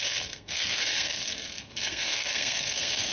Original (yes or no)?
no